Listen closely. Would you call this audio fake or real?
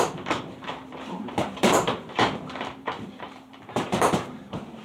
fake